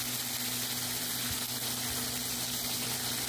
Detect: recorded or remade recorded